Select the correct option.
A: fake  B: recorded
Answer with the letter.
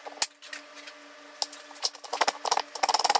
B